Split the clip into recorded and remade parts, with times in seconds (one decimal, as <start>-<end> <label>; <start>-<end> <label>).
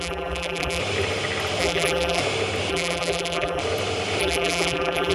0.0-0.8 remade; 0.8-1.6 recorded; 1.6-2.2 remade; 2.2-2.7 recorded; 2.7-3.6 remade; 3.6-4.2 recorded; 4.2-5.1 remade